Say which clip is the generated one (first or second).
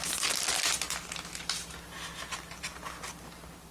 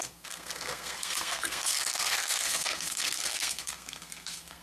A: second